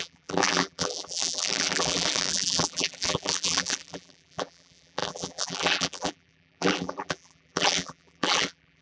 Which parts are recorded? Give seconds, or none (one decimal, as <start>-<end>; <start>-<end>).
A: none